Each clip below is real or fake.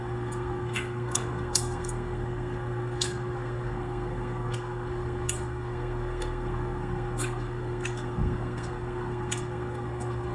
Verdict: fake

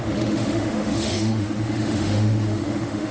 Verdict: fake